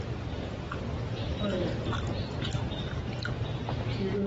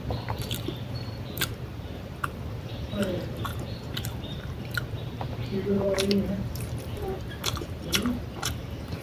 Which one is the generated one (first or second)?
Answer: second